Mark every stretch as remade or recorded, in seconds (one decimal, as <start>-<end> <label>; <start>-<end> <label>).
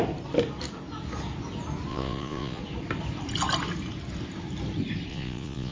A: 0.0-1.9 recorded; 1.9-2.6 remade; 2.6-5.1 recorded; 5.1-5.7 remade